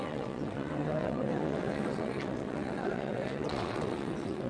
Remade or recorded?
remade